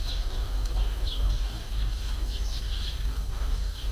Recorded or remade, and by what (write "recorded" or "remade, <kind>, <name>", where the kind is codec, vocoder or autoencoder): remade, codec, DAC